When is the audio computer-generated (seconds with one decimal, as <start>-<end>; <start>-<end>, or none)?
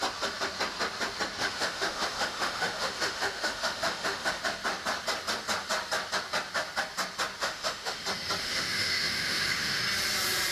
1.4-4.4; 7.4-8.0; 8.4-9.8